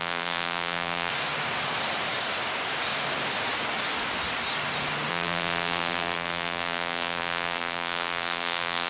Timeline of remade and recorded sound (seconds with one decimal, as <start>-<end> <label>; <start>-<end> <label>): 0.0-1.1 remade; 1.1-5.1 recorded; 5.1-8.9 remade